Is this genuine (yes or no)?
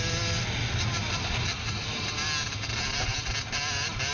yes